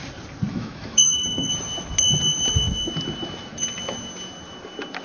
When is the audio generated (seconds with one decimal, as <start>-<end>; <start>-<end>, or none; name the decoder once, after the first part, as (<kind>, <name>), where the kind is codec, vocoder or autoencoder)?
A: 0.5-1.5 (autoencoder, DAC-VAE)